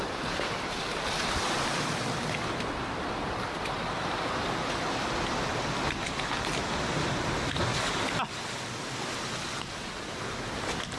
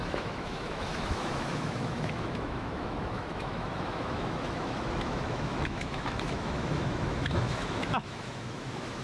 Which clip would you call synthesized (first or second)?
second